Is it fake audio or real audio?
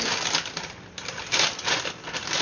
real